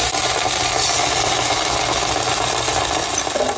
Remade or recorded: recorded